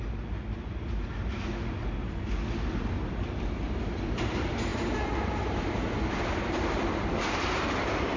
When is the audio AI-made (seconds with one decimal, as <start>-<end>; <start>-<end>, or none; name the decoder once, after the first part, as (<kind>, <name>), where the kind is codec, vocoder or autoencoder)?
none